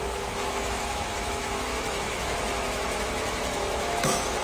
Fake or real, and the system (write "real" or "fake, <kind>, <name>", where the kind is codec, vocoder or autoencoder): fake, autoencoder, DAC-VAE